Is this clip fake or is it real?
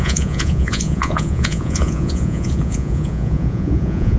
fake